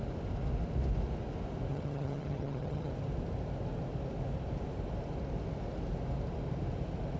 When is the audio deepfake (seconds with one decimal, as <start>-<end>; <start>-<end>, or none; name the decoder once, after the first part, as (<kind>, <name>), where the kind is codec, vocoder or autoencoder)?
1.7-2.9 (vocoder, HiFi-GAN)